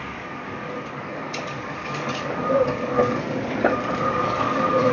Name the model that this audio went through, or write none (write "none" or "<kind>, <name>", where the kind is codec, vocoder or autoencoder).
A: codec, DAC